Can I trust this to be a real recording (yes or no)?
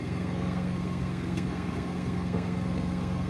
no